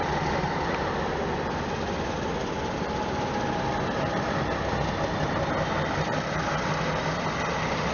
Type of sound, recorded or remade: recorded